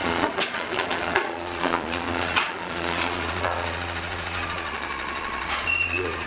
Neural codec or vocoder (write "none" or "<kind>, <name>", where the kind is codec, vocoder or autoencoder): vocoder, Vocos